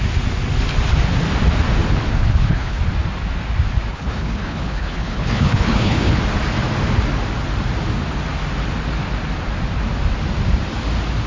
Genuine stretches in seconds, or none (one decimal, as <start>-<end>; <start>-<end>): 0.0-2.1; 2.8-3.9; 6.2-11.3